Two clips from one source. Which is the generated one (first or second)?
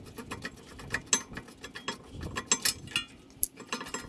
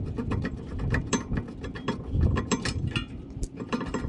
second